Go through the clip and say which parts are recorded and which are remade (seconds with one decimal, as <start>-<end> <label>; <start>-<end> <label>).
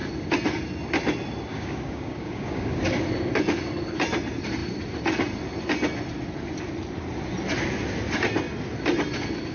0.0-1.5 recorded; 1.5-2.7 remade; 2.7-9.5 recorded